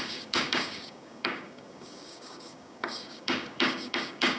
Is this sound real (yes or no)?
no